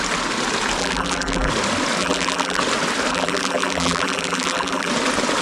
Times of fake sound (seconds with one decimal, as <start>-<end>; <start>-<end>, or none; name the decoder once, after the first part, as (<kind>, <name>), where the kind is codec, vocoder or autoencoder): 0.8-1.5 (vocoder, BigVGAN v2); 2.0-2.6; 3.1-4.9

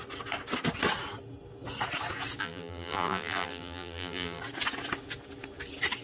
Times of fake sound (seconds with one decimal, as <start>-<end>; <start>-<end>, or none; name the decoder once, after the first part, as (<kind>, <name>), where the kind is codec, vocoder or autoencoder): 2.4-4.4 (vocoder, BigVGAN v2)

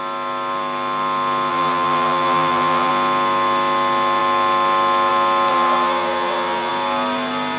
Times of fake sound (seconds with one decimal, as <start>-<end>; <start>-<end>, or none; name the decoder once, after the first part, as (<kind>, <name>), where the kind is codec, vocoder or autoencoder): 1.5-2.9 (vocoder, BigVGAN v2); 5.5-6.7

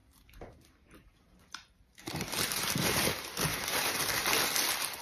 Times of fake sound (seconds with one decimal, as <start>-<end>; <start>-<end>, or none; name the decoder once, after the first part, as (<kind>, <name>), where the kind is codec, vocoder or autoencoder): 0.0-3.0 (vocoder, BigVGAN v2); 3.5-4.0

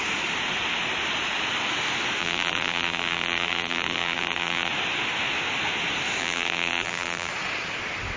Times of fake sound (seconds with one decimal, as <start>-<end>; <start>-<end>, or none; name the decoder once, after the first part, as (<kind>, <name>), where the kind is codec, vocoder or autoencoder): 2.2-4.7 (vocoder, BigVGAN v2); 6.2-7.3